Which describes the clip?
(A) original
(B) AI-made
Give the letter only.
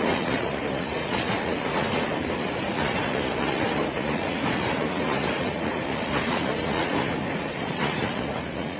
B